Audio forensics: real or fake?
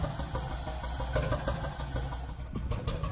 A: real